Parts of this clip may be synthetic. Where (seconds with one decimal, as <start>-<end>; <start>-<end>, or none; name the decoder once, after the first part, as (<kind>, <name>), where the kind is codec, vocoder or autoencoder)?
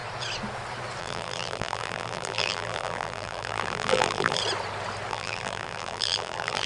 1.0-4.4 (vocoder, BigVGAN v2); 5.1-6.7